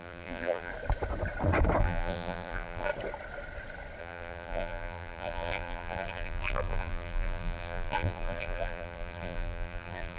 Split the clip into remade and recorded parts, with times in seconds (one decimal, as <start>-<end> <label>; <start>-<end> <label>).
0.0-0.7 remade; 0.7-1.8 recorded; 1.8-2.9 remade; 2.9-4.0 recorded; 4.0-10.2 remade